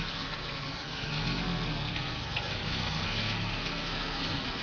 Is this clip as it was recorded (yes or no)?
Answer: no